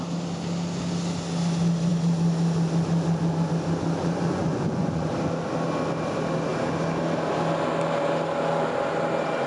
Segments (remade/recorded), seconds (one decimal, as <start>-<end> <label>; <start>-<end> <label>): 0.0-4.0 recorded; 4.0-5.1 remade; 5.1-9.5 recorded